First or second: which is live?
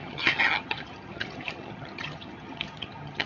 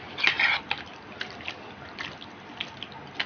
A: second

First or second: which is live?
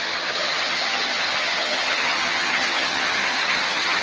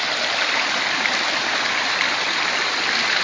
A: second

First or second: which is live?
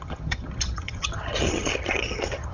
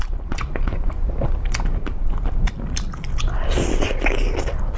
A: second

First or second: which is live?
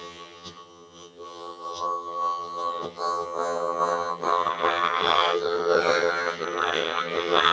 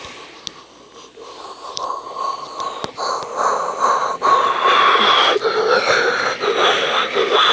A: second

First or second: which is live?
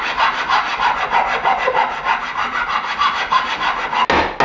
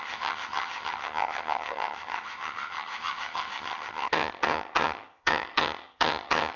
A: first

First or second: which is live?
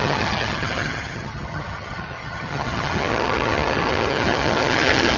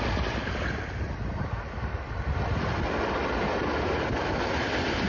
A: second